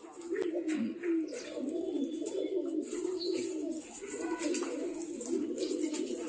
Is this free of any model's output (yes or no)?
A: yes